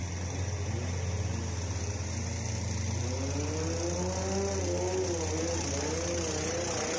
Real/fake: real